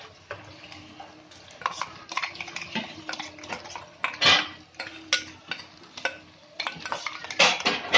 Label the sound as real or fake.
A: real